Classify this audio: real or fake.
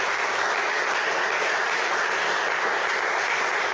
real